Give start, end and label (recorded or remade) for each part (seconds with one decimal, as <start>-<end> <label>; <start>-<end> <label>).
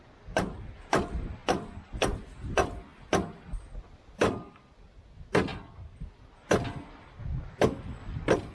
0.0-8.5 recorded